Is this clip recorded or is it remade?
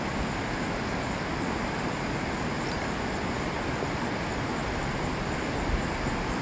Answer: recorded